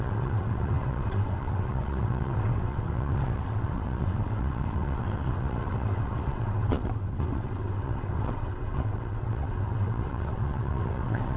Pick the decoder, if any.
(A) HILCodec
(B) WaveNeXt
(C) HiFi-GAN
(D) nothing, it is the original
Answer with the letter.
B